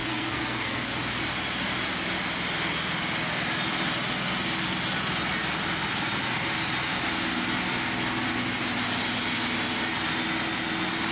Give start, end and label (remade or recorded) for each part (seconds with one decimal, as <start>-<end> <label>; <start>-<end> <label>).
0.0-0.9 remade; 0.9-11.1 recorded